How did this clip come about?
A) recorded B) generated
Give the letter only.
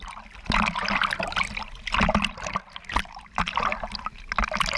A